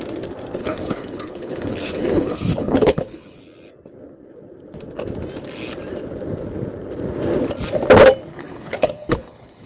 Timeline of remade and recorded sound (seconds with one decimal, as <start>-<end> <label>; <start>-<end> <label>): 0.0-0.6 recorded; 0.6-3.4 remade; 3.4-8.3 recorded; 8.3-9.7 remade